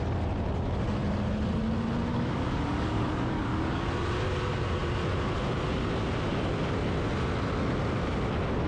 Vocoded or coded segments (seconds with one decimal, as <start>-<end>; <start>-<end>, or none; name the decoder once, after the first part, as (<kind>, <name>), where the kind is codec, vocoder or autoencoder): 2.1-3.9 (codec, DAC)